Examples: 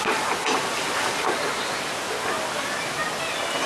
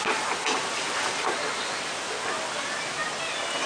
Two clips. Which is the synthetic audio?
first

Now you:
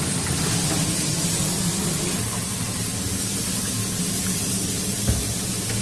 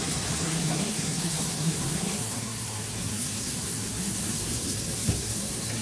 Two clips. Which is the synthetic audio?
second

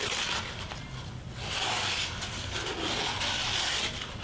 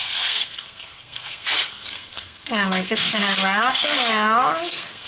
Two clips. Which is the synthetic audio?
second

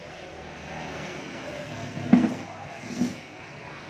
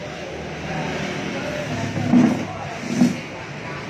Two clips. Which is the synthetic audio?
first